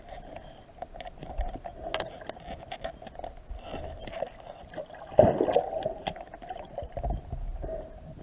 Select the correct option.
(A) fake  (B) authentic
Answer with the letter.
B